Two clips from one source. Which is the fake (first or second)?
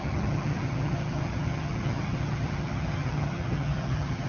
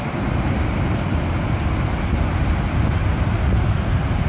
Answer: first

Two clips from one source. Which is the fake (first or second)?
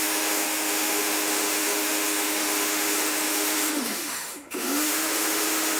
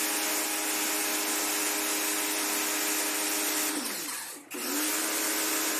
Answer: first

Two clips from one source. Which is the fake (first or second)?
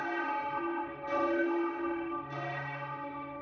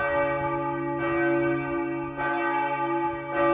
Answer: first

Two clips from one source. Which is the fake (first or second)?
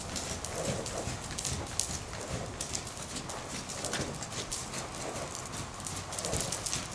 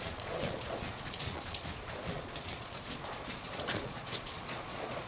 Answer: second